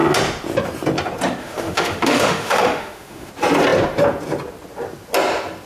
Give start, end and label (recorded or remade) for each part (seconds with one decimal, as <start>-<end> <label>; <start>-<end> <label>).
0.0-1.4 recorded; 1.4-3.3 remade; 3.3-5.7 recorded